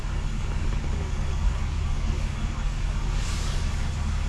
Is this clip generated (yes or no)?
yes